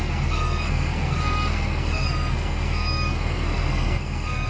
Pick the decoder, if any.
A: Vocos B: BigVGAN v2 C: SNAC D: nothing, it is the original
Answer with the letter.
C